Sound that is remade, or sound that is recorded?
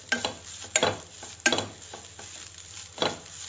recorded